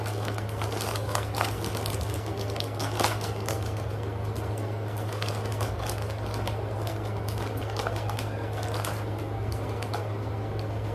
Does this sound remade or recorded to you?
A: remade